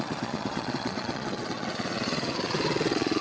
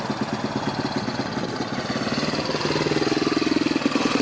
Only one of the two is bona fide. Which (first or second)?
second